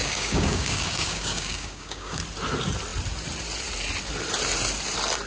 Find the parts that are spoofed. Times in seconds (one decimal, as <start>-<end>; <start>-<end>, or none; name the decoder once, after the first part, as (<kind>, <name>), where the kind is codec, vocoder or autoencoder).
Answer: 0.0-2.2 (codec, DAC)